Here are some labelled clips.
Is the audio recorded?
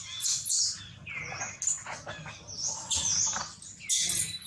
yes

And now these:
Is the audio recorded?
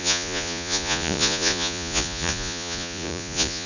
no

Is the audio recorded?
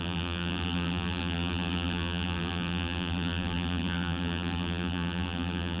no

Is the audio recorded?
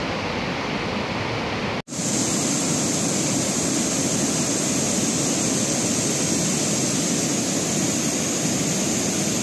yes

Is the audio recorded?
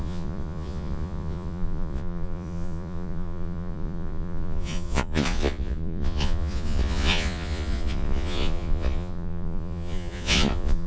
no